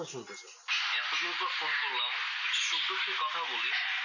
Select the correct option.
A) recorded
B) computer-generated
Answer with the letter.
A